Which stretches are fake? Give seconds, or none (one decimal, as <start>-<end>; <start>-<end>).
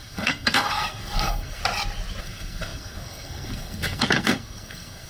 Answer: 0.0-1.6; 2.2-5.1